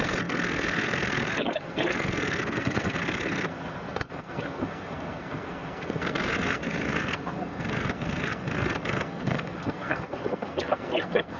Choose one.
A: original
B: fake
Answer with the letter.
B